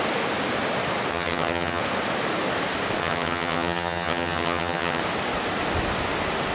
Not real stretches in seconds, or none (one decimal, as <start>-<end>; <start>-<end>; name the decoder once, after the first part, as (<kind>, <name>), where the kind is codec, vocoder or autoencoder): 1.1-1.8 (vocoder, HiFi-GAN); 3.0-5.0